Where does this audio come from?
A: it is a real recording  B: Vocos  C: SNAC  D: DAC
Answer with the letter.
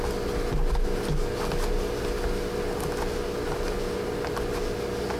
A